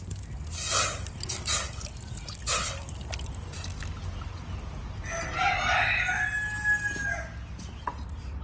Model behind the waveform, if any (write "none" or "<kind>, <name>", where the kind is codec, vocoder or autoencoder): none